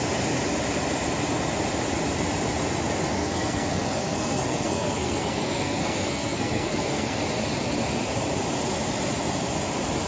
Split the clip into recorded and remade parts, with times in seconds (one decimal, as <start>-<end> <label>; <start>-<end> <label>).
0.0-3.2 recorded; 3.2-7.2 remade; 7.2-10.1 recorded